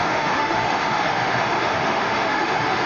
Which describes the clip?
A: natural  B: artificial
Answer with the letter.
B